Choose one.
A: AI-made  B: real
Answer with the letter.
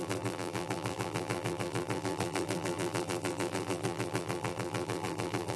A